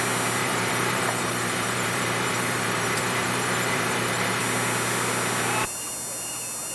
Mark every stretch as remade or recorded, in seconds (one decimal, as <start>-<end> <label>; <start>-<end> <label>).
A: 0.0-0.4 recorded; 0.4-4.4 remade; 4.4-6.7 recorded